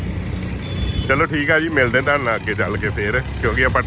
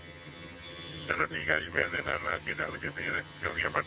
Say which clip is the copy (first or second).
second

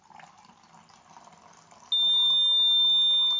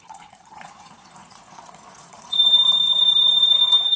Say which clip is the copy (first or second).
second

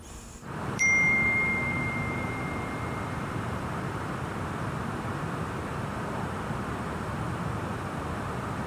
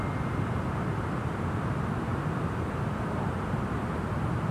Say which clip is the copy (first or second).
first